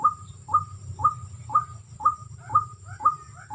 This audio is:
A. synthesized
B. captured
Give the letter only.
B